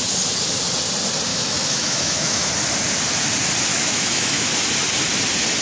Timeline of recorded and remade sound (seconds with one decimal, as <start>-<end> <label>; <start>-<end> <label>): 0.0-1.3 recorded; 1.3-2.5 remade; 2.5-3.7 recorded; 3.7-4.5 remade; 4.5-5.6 recorded